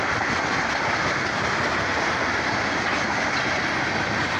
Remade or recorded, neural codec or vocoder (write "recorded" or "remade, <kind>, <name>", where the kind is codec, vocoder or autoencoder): recorded